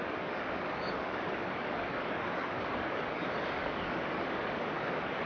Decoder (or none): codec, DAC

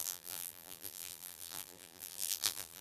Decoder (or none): vocoder, BigVGAN v2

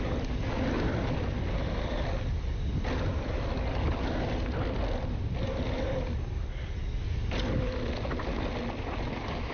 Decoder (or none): none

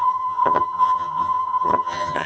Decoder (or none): vocoder, HiFi-GAN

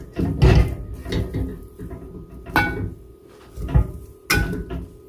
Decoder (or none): none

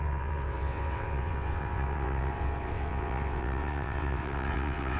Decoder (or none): vocoder, WaveNeXt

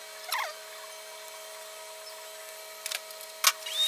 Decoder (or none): none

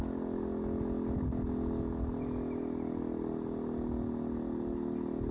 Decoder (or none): none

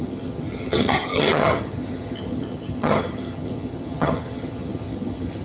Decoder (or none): vocoder, HiFi-GAN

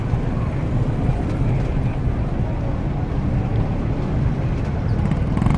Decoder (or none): none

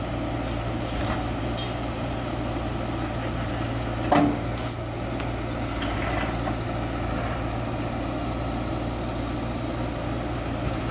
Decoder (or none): none